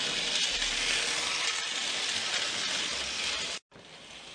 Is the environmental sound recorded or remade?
recorded